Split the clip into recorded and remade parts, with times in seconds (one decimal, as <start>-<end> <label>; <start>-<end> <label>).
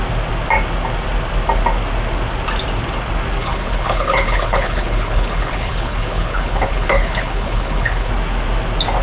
0.0-3.4 recorded; 3.4-8.1 remade; 8.1-9.0 recorded